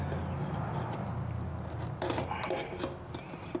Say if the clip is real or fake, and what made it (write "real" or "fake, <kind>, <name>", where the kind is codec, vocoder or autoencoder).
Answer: real